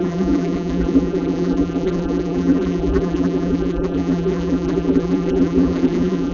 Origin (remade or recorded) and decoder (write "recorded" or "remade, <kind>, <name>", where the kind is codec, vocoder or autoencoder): remade, vocoder, BigVGAN v2